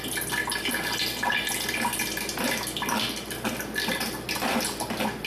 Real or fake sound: real